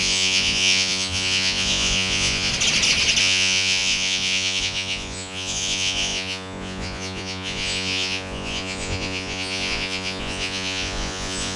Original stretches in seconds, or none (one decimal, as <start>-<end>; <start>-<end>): 2.5-3.2